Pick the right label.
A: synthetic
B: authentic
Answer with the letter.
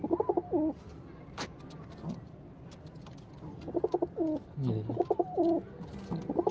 B